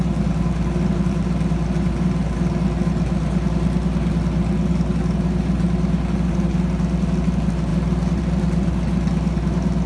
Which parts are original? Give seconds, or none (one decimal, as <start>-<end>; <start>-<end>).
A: 0.0-9.9